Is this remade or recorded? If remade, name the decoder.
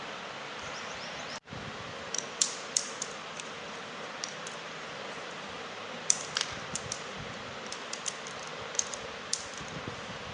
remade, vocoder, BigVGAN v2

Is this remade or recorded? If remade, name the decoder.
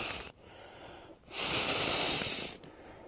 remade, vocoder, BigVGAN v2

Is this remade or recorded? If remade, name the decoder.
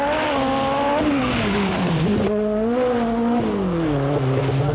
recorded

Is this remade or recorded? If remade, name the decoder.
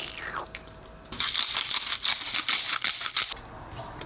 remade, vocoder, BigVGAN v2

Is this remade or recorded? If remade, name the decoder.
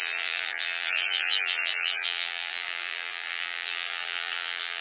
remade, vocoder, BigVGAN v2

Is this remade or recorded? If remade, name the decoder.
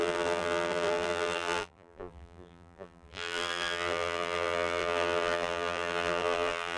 remade, vocoder, BigVGAN v2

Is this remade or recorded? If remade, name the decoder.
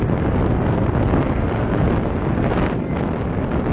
recorded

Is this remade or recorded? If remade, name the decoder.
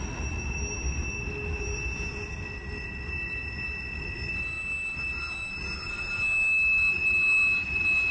recorded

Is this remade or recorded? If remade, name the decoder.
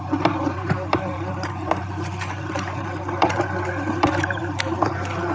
remade, vocoder, BigVGAN v2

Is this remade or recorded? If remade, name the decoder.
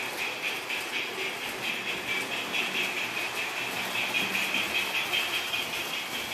recorded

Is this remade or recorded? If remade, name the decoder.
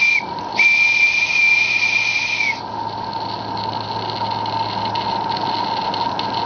recorded